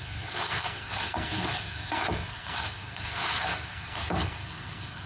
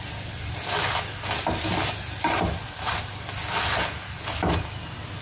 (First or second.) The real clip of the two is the second